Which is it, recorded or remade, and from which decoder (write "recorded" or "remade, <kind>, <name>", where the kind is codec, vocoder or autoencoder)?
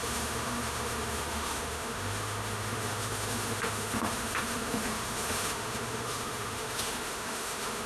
remade, autoencoder, DAC-VAE